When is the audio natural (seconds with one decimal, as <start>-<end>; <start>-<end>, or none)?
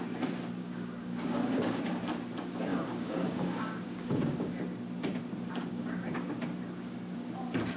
0.0-0.6; 1.8-2.7; 4.5-5.7; 6.3-7.8